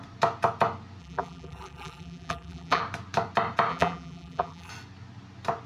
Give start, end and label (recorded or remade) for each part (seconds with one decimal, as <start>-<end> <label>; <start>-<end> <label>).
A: 0.0-1.0 recorded; 1.0-2.8 remade; 2.8-3.7 recorded; 3.7-4.7 remade; 4.7-5.7 recorded